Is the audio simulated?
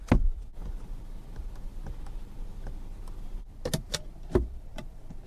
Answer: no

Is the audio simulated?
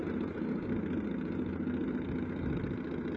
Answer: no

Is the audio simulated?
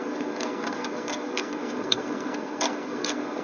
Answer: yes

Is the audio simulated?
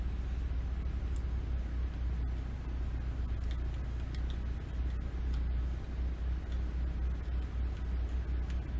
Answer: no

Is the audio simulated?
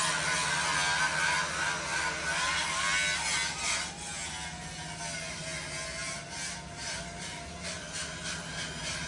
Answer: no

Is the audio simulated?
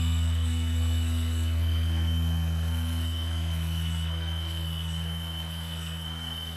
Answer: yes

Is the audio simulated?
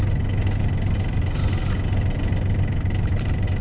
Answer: no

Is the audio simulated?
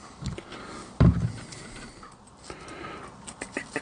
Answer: no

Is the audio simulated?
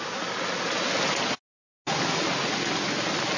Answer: no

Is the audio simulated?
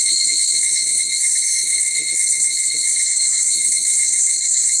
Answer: yes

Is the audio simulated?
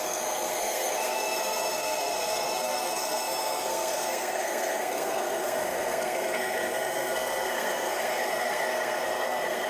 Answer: yes